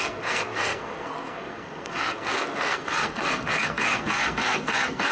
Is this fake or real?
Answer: fake